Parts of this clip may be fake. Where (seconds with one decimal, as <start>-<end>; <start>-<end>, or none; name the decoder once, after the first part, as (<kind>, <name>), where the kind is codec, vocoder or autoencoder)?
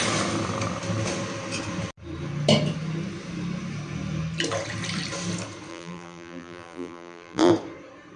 5.7-7.5 (vocoder, BigVGAN v2)